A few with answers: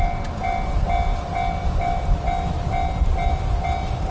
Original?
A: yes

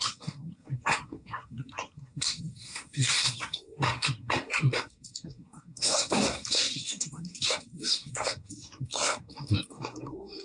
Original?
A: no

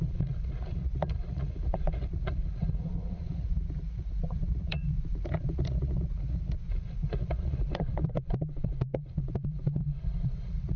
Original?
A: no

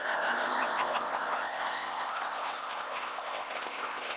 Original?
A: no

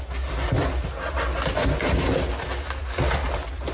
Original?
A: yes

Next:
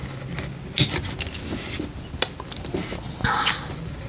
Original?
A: yes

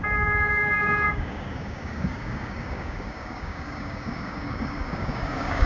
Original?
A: no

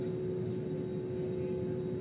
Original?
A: yes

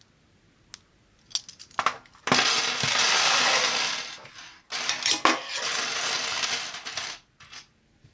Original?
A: yes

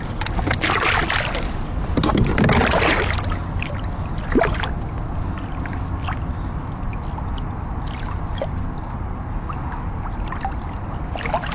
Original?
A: yes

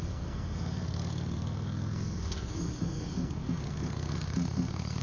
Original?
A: no